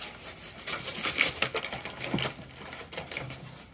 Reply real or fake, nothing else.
real